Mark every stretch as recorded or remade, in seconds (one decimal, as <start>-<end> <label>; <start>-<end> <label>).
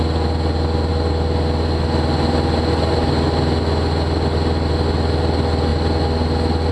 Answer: 0.0-6.7 recorded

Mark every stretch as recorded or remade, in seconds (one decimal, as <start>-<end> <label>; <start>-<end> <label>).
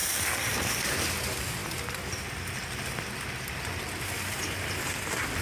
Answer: 0.0-0.8 remade; 0.8-1.6 recorded; 1.6-4.8 remade; 4.8-5.4 recorded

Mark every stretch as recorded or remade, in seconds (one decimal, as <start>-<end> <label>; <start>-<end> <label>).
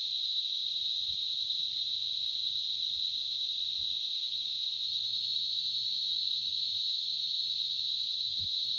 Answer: 0.0-0.6 remade; 0.6-3.2 recorded; 3.2-8.8 remade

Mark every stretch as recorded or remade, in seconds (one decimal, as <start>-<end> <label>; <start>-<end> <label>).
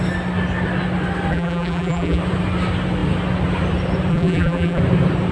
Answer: 0.0-1.3 recorded; 1.3-2.2 remade; 2.2-4.1 recorded; 4.1-4.8 remade; 4.8-5.3 recorded